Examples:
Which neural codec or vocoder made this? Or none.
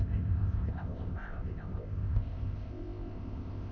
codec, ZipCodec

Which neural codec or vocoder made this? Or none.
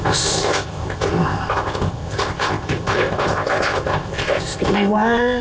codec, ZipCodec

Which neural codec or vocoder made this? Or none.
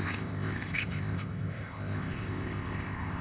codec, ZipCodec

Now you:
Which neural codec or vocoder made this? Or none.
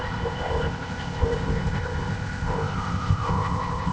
codec, ZipCodec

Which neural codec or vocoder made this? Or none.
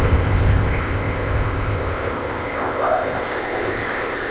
codec, ZipCodec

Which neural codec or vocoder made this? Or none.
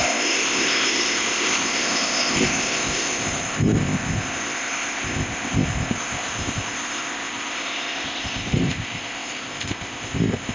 codec, ZipCodec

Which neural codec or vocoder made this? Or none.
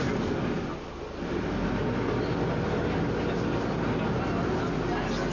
none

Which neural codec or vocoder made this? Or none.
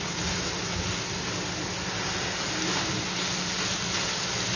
none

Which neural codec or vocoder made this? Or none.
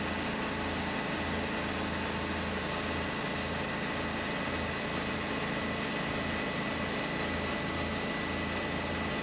none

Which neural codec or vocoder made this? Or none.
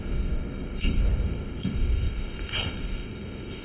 codec, ZipCodec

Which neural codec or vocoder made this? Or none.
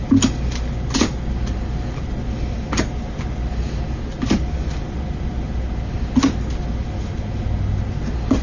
none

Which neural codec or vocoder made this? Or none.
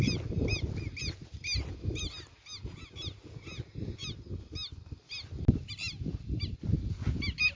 none